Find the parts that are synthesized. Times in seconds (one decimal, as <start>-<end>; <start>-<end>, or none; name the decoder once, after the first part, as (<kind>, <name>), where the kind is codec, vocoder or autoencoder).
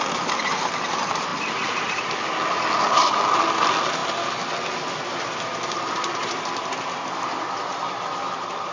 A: none